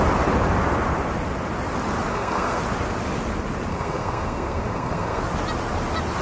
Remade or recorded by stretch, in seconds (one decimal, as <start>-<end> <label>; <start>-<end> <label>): 0.0-2.1 recorded; 2.1-2.6 remade; 2.6-3.7 recorded; 3.7-5.2 remade; 5.2-6.2 recorded